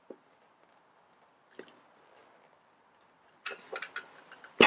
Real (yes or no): yes